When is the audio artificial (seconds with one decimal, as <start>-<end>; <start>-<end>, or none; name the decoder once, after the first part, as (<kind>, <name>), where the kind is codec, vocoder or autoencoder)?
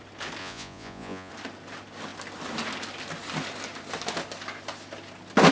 0.4-1.3 (vocoder, Vocos)